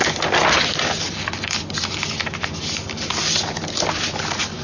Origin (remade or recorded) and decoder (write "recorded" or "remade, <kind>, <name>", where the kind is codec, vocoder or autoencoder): recorded